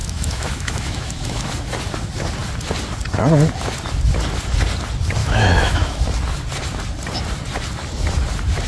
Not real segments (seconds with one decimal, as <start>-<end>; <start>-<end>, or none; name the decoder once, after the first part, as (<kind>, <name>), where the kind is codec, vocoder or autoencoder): 0.0-1.5 (autoencoder, DAC-VAE); 5.2-6.0